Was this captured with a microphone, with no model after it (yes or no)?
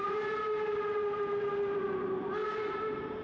yes